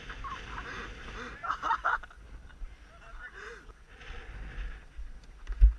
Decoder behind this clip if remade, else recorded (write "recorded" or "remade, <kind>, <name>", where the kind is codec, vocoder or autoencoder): recorded